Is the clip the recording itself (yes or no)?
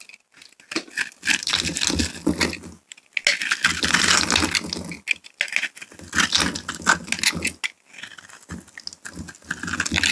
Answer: yes